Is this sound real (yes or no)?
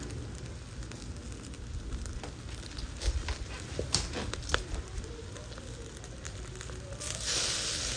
yes